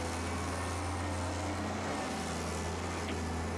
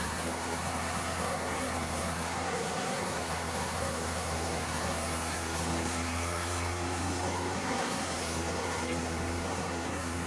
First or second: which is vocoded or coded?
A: second